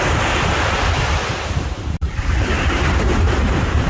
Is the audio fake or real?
fake